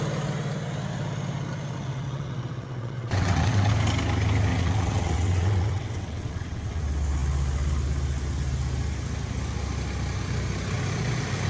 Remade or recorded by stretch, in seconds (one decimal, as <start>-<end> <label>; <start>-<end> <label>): 0.0-1.8 recorded; 1.8-3.7 remade; 3.7-4.5 recorded; 4.5-6.8 remade; 6.8-11.5 recorded